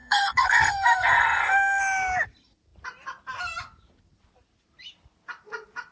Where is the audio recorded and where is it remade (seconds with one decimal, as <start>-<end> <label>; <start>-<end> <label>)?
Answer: 0.0-1.8 remade; 1.8-5.9 recorded